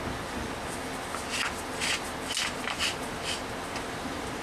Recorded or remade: recorded